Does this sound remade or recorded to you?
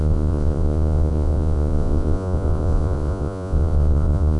remade